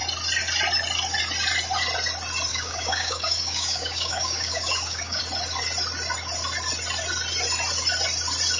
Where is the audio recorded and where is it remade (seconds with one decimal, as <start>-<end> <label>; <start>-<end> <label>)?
0.0-2.5 recorded; 2.5-5.2 remade; 5.2-8.6 recorded